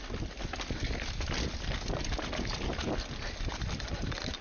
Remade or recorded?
recorded